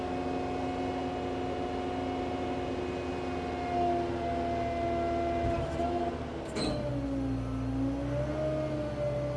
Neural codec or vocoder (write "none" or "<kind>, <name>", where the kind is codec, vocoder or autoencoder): none